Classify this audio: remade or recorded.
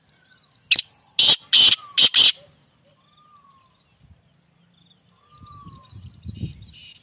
recorded